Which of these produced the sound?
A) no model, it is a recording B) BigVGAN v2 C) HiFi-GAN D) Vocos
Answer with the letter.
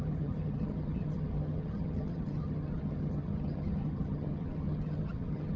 C